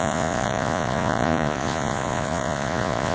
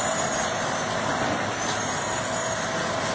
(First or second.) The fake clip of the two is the first